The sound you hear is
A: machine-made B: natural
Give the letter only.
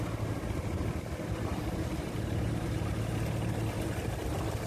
B